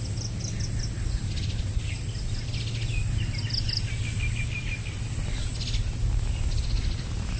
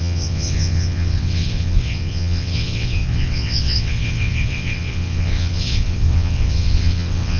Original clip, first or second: first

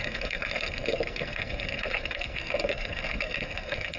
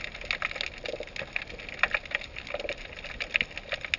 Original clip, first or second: second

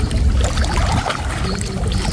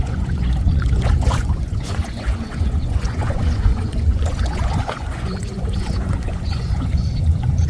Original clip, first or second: first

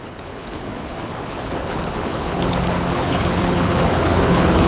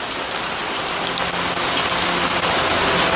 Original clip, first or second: second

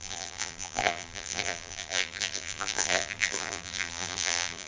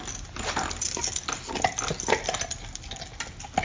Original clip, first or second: second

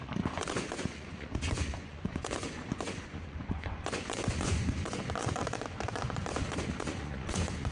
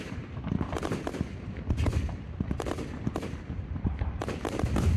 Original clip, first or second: second